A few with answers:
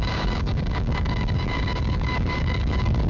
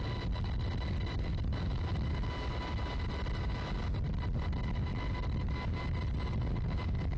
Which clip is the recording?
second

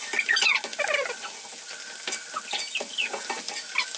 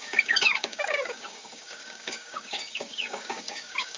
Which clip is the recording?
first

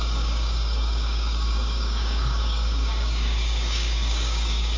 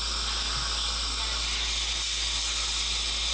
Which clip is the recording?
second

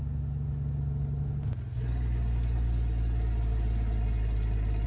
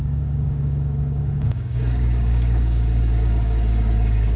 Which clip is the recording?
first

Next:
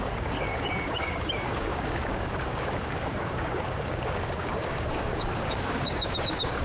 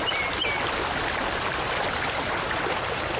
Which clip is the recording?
second